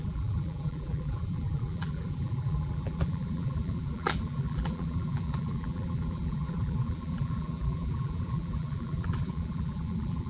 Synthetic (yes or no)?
yes